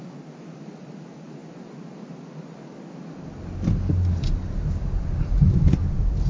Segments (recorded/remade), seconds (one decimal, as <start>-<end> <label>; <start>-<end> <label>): 0.0-6.3 recorded